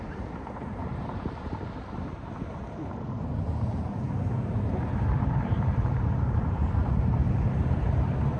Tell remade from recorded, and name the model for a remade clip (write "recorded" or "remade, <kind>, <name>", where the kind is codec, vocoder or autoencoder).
remade, vocoder, BigVGAN v2